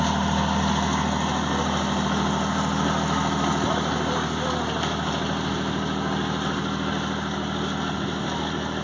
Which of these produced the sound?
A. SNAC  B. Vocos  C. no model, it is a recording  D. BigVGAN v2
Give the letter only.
C